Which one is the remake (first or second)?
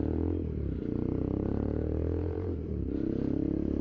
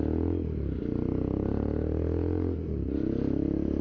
first